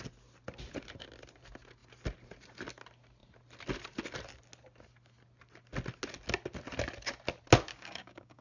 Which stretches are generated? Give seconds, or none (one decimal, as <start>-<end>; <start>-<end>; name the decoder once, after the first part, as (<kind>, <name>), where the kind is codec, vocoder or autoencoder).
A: 7.7-8.4 (codec, DAC)